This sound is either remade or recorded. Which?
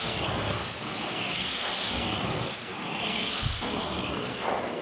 remade